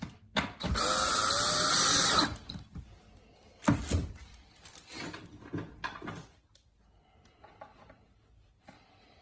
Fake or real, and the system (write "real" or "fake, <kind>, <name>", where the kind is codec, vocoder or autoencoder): real